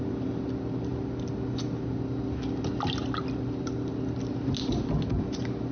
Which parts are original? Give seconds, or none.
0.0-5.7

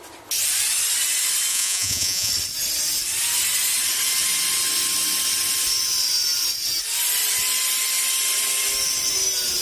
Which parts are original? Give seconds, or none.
0.0-1.5; 2.3-9.6

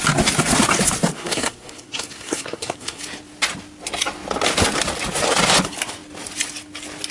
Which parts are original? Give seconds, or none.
0.0-1.1; 3.0-7.1

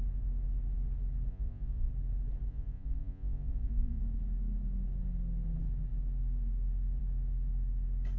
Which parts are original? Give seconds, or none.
0.0-1.3; 1.9-2.5; 4.0-8.2